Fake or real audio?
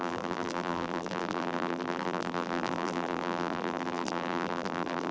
fake